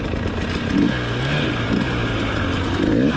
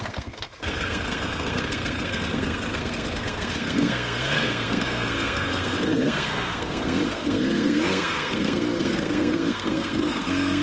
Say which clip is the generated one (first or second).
second